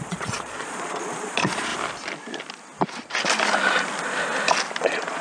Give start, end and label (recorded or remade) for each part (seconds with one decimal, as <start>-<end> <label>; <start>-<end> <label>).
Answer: 0.0-1.7 remade; 1.7-4.8 recorded; 4.8-5.2 remade